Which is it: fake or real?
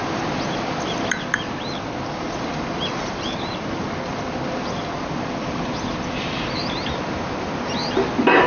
real